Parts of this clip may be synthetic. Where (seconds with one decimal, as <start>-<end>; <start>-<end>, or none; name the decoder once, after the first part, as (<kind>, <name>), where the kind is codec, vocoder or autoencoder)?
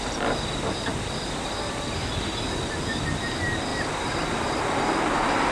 none